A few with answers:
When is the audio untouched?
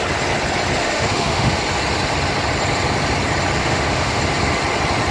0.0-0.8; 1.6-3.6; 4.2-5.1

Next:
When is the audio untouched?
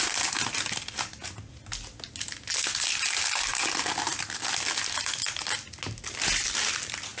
0.0-7.2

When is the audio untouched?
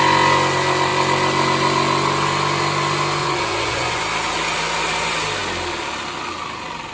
0.0-3.2; 4.0-6.9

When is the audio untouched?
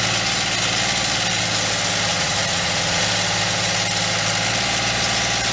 0.0-2.1; 3.0-5.5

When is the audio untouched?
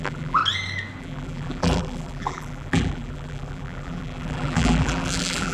0.4-1.0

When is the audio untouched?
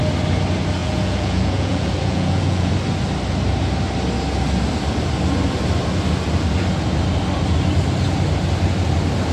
0.0-0.8; 2.7-9.3